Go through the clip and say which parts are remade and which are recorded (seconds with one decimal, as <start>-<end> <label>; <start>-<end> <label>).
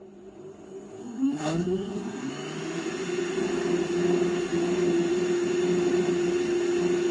0.0-1.0 recorded; 1.0-2.3 remade; 2.3-7.1 recorded